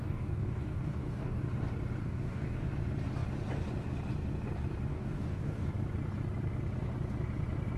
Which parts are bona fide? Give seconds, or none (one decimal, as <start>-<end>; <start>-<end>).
1.4-2.0; 2.7-4.9; 5.7-7.8